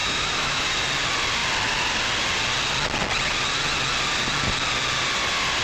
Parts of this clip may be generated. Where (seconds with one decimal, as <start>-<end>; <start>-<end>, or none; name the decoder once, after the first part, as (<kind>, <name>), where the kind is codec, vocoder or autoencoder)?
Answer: 0.0-0.6 (autoencoder, DAC-VAE)